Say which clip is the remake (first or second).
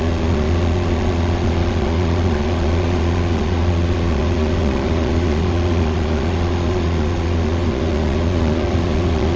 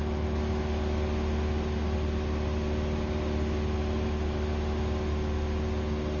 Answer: first